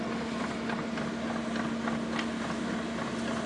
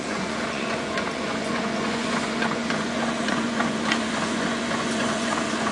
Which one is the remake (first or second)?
second